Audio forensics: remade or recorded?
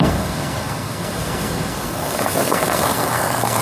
remade